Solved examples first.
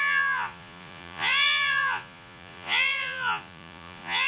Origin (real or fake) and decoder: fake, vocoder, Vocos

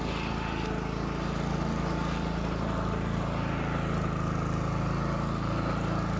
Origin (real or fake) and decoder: real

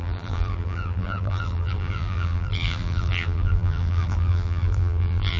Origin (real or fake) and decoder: fake, vocoder, BigVGAN v2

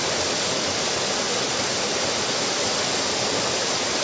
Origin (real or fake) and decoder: real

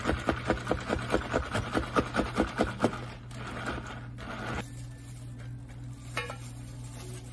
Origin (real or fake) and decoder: real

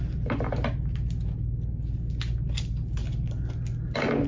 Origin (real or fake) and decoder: real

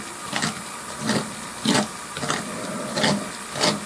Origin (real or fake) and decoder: real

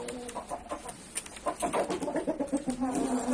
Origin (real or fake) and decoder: real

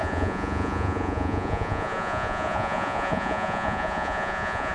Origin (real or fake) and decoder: fake, vocoder, Vocos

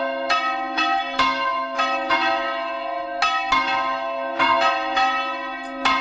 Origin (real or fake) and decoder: real